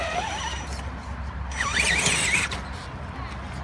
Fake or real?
real